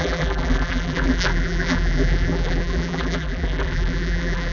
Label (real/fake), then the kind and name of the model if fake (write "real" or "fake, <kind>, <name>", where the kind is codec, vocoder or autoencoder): fake, vocoder, BigVGAN v2